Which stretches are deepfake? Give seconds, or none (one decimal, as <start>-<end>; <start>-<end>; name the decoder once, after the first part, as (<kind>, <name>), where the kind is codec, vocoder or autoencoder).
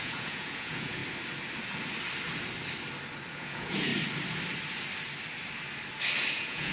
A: 0.0-1.0 (vocoder, Vocos); 3.3-3.9; 6.3-6.7